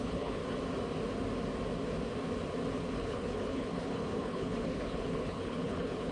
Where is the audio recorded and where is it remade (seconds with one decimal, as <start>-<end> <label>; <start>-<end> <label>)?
0.0-0.4 remade; 0.4-2.9 recorded; 2.9-6.1 remade